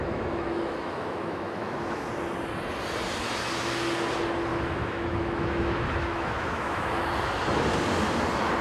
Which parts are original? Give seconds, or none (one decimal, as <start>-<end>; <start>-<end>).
2.1-4.5; 7.1-8.6